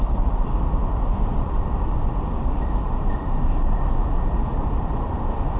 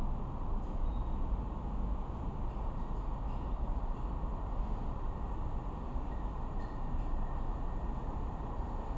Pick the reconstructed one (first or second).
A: first